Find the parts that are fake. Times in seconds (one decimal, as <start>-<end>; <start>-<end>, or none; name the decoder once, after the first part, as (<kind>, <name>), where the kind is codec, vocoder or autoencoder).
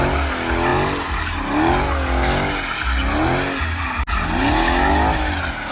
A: none